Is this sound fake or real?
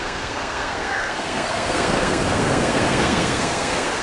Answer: fake